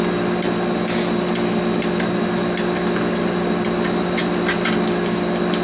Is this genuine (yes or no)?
yes